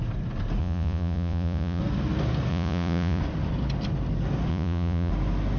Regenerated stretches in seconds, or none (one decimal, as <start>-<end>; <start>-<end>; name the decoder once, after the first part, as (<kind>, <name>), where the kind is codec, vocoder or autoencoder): 0.6-1.8 (vocoder, Vocos); 2.5-3.2; 4.5-5.1